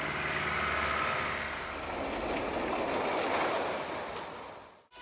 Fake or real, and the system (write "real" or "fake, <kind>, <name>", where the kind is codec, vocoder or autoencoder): real